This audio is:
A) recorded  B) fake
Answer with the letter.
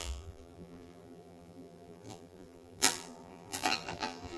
B